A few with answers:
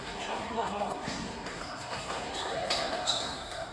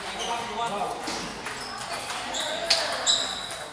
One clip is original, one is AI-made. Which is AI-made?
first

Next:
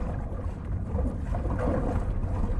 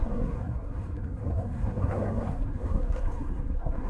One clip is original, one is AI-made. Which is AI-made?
second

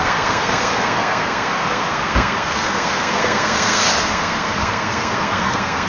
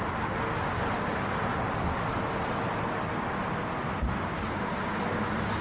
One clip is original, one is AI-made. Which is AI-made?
first